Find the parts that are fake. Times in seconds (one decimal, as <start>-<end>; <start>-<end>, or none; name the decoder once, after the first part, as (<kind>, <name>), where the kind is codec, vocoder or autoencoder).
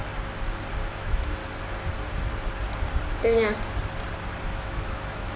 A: 0.8-1.4 (autoencoder, DAC-VAE); 4.6-5.4